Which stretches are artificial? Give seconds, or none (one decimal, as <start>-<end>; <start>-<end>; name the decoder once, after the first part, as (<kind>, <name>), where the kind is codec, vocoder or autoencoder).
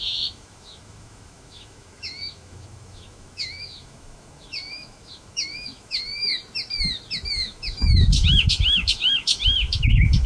0.0-6.3 (autoencoder, DAC-VAE); 7.3-10.3